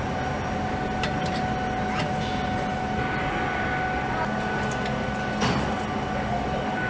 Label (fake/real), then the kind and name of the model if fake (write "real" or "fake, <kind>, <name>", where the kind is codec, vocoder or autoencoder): real